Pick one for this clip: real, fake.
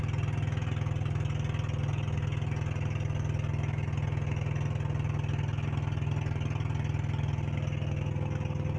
real